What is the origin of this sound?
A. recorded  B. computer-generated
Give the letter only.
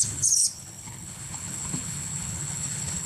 B